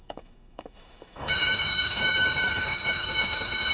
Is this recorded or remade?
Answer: remade